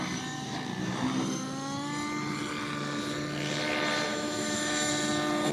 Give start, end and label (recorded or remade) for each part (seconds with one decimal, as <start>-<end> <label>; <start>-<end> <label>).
0.0-4.1 recorded; 4.1-4.9 remade; 4.9-5.5 recorded